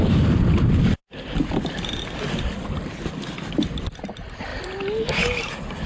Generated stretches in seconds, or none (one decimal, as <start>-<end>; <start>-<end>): none